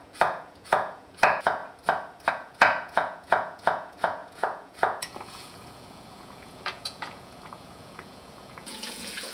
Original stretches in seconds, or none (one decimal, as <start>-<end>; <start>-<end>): 1.6-2.3